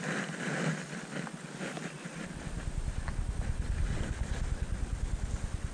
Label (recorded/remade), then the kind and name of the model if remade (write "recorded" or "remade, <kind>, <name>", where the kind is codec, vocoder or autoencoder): recorded